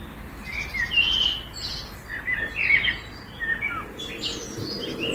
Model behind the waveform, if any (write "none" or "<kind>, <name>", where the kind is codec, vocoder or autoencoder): none